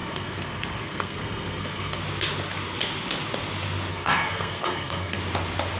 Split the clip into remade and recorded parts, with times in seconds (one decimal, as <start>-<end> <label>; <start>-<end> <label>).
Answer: 0.0-2.0 remade; 2.0-3.9 recorded; 3.9-5.2 remade; 5.2-5.8 recorded